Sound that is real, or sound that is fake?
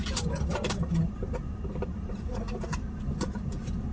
fake